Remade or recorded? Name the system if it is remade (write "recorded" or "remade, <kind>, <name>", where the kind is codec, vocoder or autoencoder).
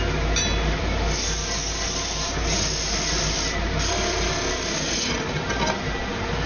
recorded